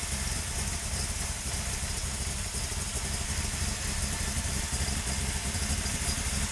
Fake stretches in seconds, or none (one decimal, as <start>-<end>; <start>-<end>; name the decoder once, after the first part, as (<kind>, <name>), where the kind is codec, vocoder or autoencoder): 5.4-6.5 (vocoder, BigVGAN v2)